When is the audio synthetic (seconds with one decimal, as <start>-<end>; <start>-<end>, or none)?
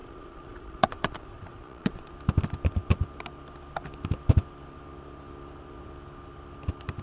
0.0-2.1